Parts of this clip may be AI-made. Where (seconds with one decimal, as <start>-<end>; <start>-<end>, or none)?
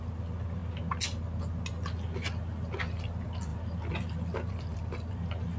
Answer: 0.0-0.6; 2.8-5.6